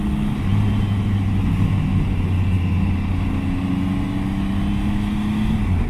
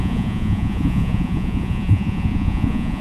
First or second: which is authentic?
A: first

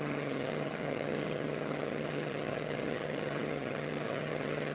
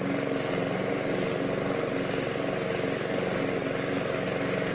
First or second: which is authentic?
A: second